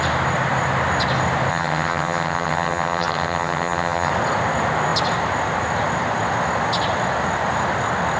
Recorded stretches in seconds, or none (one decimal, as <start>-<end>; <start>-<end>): 0.0-1.5; 4.1-8.2